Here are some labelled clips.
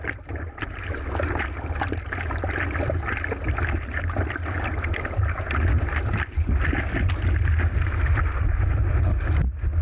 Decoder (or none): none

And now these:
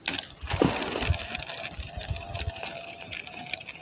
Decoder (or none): none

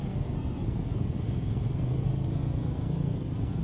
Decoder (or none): codec, SNAC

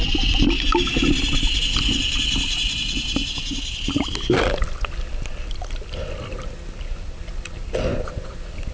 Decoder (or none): none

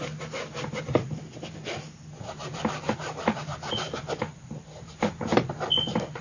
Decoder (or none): none